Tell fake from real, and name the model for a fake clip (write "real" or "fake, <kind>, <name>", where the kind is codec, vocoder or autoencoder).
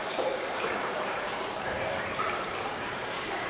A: fake, vocoder, BigVGAN v2